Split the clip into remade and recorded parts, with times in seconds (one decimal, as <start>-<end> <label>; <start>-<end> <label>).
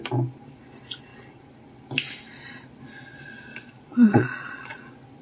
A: 0.0-3.5 recorded; 3.5-4.8 remade; 4.8-5.2 recorded